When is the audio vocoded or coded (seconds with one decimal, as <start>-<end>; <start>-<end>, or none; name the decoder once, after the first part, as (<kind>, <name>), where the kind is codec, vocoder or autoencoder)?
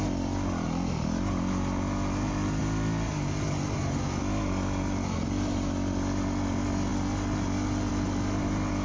none